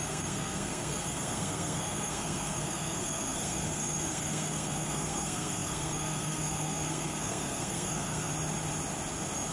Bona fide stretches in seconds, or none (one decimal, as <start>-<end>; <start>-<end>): 8.3-9.5